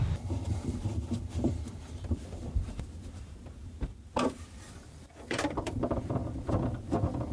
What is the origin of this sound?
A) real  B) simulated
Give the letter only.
B